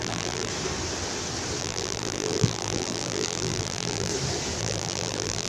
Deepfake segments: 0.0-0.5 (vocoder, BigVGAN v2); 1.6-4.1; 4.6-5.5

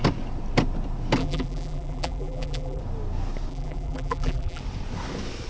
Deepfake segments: 1.2-2.8 (vocoder, BigVGAN v2); 3.5-4.6